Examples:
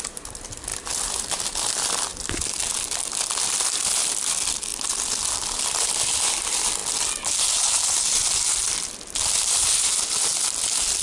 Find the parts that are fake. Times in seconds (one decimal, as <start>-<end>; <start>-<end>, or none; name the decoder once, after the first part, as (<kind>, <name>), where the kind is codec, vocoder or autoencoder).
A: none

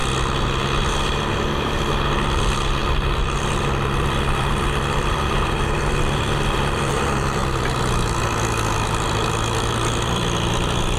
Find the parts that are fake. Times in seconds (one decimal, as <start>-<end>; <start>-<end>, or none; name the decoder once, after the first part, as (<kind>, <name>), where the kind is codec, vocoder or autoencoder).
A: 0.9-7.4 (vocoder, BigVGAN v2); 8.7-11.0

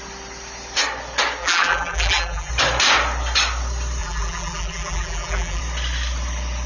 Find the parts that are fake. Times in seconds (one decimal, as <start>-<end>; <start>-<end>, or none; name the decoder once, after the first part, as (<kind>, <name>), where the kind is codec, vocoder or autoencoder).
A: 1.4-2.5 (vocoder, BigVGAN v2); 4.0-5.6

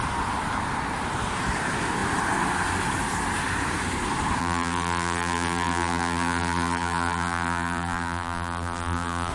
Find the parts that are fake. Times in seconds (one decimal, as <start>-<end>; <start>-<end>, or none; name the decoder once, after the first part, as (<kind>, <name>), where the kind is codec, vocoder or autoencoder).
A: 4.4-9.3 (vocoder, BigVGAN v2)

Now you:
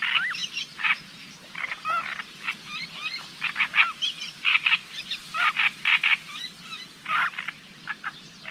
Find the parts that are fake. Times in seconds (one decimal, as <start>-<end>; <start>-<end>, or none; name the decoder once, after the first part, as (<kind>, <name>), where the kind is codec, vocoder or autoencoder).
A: 0.4-2.4 (vocoder, BigVGAN v2); 4.5-5.0